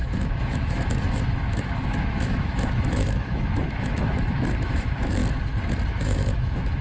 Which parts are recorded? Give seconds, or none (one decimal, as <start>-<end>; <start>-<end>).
5.2-5.9